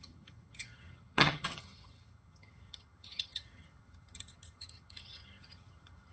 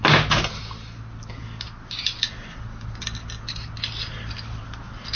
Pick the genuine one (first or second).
second